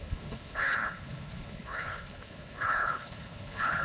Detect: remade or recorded remade